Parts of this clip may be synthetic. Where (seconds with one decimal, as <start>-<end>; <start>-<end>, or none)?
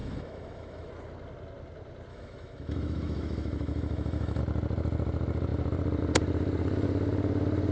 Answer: 0.0-0.9; 2.1-4.4